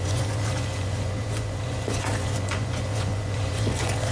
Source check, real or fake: fake